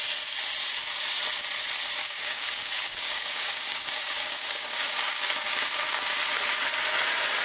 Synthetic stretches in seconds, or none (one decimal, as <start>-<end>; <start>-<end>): 2.0-6.0